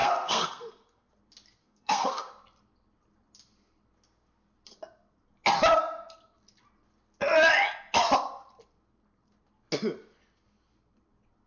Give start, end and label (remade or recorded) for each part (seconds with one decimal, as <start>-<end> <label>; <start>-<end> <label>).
0.0-1.1 remade; 1.1-1.6 recorded; 1.6-2.3 remade; 2.3-11.5 recorded